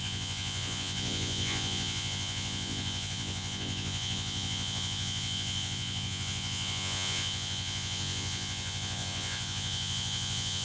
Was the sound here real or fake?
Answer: fake